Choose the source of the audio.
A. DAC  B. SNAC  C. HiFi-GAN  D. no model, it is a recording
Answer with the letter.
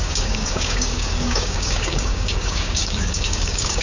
A